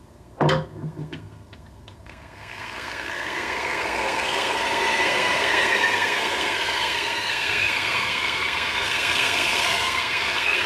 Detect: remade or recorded remade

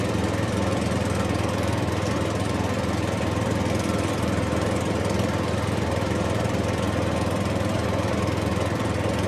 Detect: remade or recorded recorded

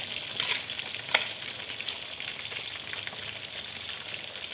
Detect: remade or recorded recorded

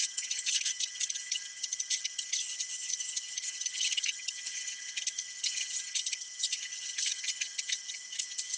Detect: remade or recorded remade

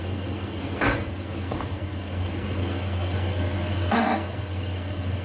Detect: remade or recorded remade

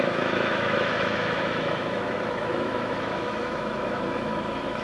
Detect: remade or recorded remade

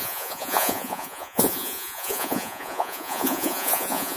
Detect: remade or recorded remade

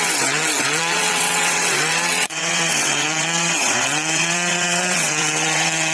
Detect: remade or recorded remade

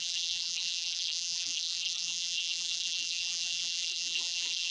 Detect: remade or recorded remade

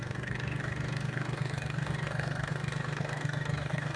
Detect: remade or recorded remade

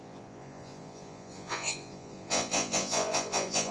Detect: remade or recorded remade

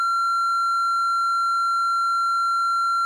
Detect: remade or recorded recorded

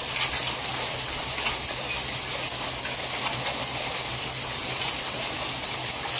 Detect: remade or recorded recorded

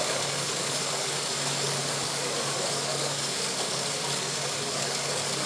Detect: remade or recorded remade